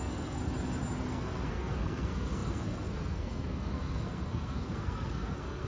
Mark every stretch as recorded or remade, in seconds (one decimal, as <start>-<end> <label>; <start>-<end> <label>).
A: 0.0-0.4 remade; 0.4-1.1 recorded; 1.1-5.7 remade